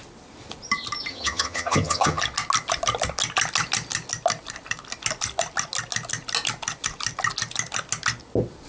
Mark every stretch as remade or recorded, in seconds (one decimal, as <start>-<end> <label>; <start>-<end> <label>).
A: 0.0-1.1 recorded; 1.1-2.2 remade; 2.2-8.7 recorded